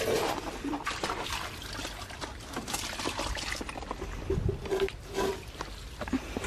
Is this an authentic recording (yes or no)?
yes